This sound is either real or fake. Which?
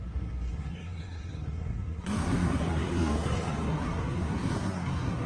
fake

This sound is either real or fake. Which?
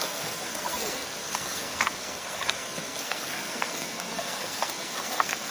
fake